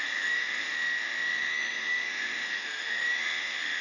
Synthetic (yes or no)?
yes